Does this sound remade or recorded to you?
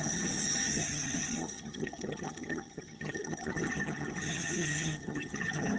remade